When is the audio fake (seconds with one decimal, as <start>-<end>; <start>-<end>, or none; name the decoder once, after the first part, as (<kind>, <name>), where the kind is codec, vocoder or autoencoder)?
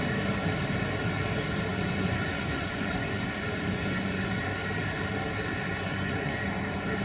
1.7-4.4 (vocoder, Vocos); 5.7-6.4